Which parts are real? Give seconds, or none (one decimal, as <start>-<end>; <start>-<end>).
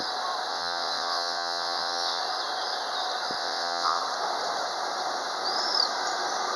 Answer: 0.0-0.5; 2.2-3.4; 4.0-6.6